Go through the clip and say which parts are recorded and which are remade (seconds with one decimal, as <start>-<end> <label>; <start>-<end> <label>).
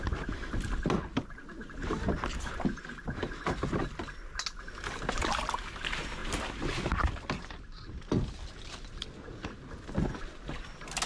0.0-11.1 recorded